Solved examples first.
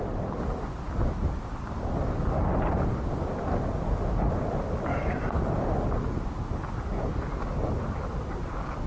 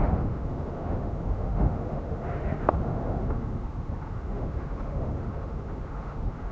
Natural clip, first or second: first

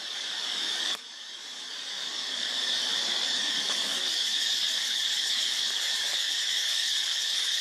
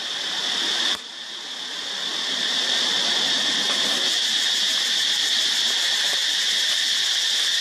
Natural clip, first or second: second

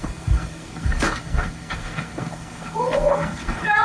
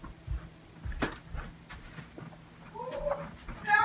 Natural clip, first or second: second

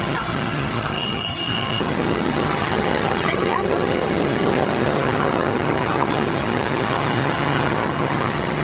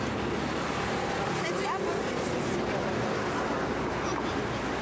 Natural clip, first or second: second